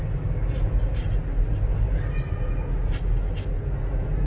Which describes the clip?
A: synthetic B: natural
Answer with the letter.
B